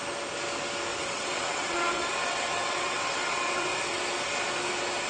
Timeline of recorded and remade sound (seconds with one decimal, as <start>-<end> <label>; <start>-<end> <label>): 0.0-0.9 recorded; 0.9-4.0 remade; 4.0-5.1 recorded